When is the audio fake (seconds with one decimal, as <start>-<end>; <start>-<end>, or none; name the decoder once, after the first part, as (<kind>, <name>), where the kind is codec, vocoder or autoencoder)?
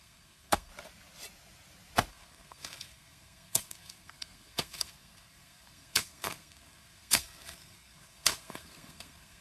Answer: 0.0-0.7 (codec, SNAC); 2.1-9.4